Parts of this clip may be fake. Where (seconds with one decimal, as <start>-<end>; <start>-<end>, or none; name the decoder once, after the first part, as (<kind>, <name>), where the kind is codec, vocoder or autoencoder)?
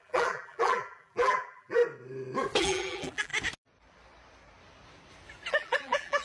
0.0-1.8 (vocoder, BigVGAN v2); 2.6-3.3; 5.5-6.2